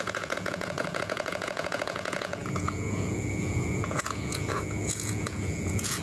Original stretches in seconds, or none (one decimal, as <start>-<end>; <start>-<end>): none